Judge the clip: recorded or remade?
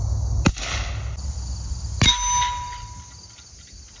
recorded